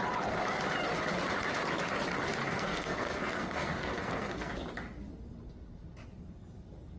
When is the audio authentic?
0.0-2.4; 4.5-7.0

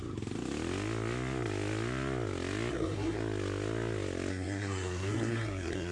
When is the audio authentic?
0.0-2.7; 3.2-4.3